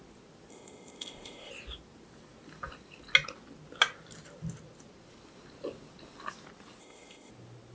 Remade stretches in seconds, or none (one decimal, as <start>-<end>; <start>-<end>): 0.5-1.5; 6.8-7.3